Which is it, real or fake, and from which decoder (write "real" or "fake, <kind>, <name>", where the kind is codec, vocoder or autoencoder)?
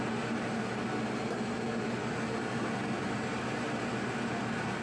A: real